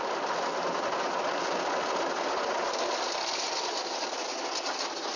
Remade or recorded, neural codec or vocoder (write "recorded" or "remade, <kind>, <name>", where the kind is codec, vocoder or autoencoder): recorded